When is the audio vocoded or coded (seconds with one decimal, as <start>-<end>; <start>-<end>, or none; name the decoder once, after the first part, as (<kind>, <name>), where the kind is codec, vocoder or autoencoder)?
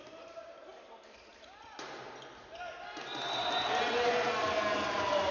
none